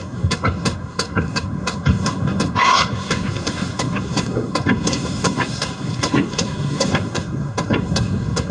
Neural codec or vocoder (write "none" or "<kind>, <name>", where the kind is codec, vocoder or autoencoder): codec, SNAC